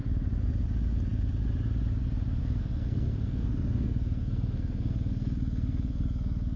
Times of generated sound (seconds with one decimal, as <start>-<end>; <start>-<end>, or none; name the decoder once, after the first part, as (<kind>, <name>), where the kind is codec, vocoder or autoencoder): 2.4-6.6 (codec, SNAC)